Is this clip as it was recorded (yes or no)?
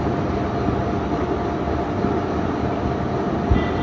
yes